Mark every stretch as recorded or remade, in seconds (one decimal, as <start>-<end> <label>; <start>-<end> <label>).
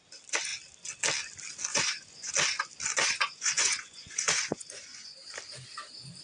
0.0-1.7 recorded; 1.7-2.3 remade; 2.3-3.0 recorded; 3.0-5.2 remade; 5.2-6.2 recorded